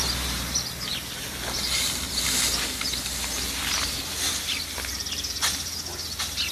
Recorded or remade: recorded